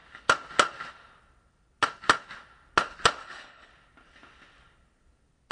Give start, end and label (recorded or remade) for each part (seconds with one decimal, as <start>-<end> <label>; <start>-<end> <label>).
0.0-3.2 recorded; 3.2-3.7 remade; 3.7-5.5 recorded